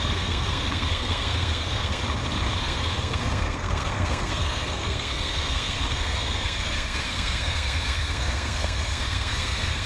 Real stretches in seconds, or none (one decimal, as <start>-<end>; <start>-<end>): 2.0-2.6